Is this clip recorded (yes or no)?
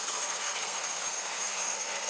no